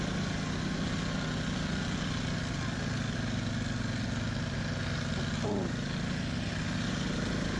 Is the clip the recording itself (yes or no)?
yes